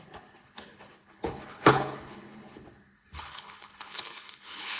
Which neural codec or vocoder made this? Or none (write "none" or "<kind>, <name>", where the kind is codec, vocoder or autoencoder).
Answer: codec, HILCodec